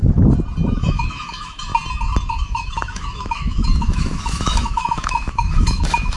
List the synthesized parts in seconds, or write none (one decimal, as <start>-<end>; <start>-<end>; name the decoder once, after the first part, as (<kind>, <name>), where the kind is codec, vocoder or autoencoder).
0.7-1.7 (autoencoder, DAC-VAE); 2.3-6.2